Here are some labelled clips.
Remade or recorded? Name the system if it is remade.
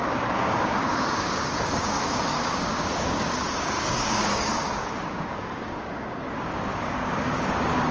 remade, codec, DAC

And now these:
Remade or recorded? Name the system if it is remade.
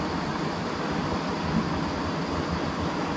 recorded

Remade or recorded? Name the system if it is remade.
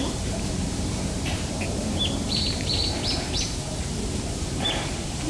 remade, vocoder, BigVGAN v2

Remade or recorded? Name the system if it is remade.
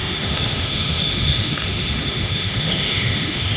remade, autoencoder, DAC-VAE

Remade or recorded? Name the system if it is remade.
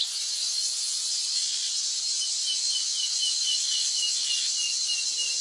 recorded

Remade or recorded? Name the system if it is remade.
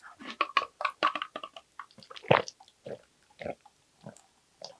recorded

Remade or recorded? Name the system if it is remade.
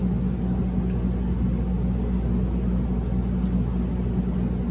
recorded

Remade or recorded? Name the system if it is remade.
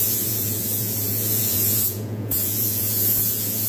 remade, vocoder, Vocos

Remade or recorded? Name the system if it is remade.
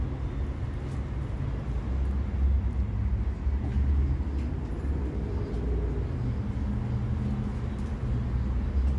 recorded